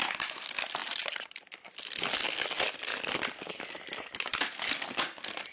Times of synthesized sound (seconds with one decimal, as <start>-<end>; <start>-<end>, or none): none